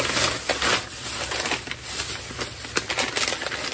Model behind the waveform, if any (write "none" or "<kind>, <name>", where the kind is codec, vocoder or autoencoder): none